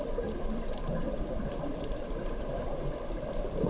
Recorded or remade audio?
remade